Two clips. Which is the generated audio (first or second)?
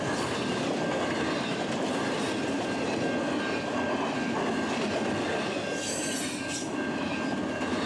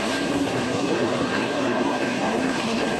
second